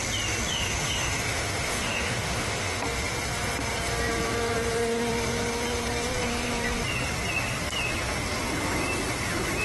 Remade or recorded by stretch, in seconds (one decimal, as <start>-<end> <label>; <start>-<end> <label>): 0.0-0.5 recorded; 0.5-2.8 remade; 2.8-9.6 recorded